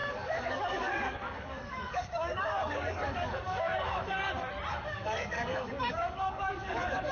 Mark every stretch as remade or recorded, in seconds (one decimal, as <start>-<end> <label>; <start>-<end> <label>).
0.0-4.3 remade; 4.3-4.7 recorded; 4.7-7.1 remade